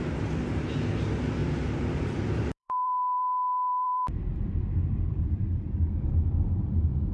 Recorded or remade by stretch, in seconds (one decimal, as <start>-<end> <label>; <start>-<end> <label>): 0.0-1.4 recorded; 1.4-5.4 remade; 5.4-7.1 recorded